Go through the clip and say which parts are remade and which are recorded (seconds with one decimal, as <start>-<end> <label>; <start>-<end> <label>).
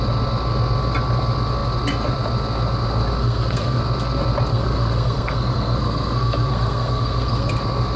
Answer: 0.0-3.2 recorded; 3.2-3.8 remade; 3.8-4.5 recorded; 4.5-7.5 remade; 7.5-8.0 recorded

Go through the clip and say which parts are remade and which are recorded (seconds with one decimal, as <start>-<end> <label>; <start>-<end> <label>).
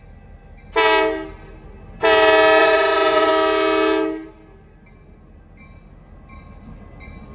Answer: 0.0-2.6 recorded; 2.6-3.3 remade; 3.3-7.3 recorded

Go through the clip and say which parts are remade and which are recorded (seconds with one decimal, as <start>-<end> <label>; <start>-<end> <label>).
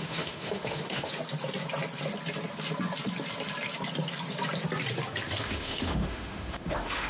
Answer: 0.0-1.1 remade; 1.1-5.4 recorded; 5.4-7.1 remade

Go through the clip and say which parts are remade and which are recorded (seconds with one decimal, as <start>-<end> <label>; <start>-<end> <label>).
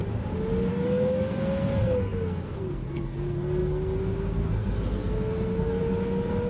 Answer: 0.0-0.7 recorded; 0.7-5.8 remade; 5.8-6.5 recorded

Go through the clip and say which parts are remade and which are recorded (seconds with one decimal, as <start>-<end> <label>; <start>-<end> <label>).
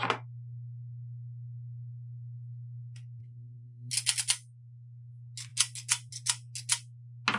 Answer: 0.0-3.2 recorded; 3.2-3.9 remade; 3.9-7.4 recorded